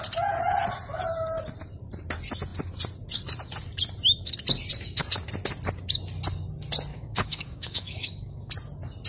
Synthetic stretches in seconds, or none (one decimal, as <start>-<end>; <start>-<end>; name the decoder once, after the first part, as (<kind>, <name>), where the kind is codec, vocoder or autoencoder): 6.9-8.5 (codec, DAC)